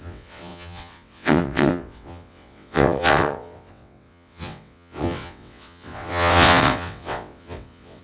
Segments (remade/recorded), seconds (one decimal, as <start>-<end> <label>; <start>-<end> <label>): 0.0-8.0 remade